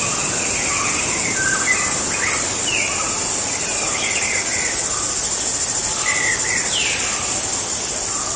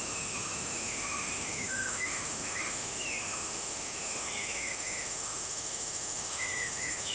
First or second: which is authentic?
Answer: first